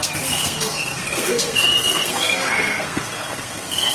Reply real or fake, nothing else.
fake